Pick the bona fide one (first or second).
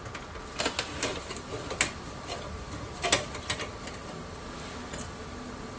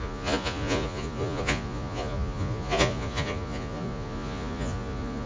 first